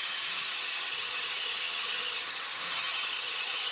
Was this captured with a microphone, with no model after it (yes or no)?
no